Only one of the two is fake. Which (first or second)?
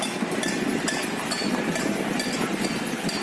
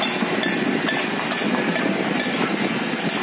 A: first